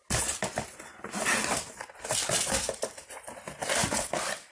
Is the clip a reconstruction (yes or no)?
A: no